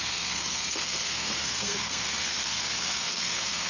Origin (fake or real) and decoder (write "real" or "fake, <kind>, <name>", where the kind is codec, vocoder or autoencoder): fake, codec, SNAC